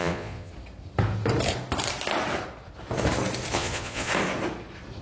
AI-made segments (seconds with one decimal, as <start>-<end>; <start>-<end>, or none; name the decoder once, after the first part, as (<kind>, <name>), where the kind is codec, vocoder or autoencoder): 0.0-0.5 (vocoder, Vocos); 3.5-4.1